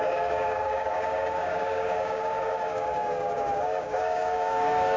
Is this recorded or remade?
remade